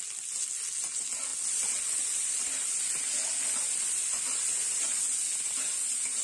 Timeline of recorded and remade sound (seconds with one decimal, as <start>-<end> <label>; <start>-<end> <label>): 0.0-6.2 recorded